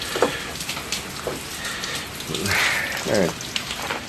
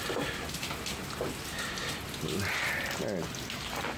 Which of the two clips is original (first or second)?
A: second